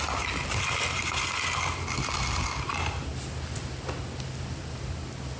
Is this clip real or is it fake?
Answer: real